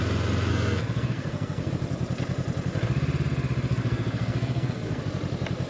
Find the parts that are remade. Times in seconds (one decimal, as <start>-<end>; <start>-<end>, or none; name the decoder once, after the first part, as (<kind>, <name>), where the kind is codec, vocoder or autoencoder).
0.5-1.7 (codec, SNAC); 3.7-5.0